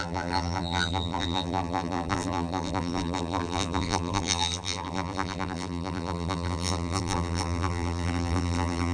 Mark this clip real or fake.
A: fake